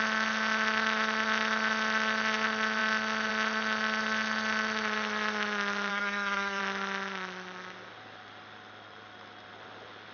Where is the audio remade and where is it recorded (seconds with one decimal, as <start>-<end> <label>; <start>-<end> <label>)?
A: 0.0-5.9 recorded; 5.9-6.6 remade; 6.6-10.1 recorded